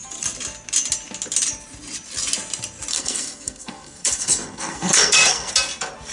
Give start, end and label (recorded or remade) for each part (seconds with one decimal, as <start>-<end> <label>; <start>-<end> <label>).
0.0-2.9 recorded; 2.9-5.5 remade; 5.5-6.1 recorded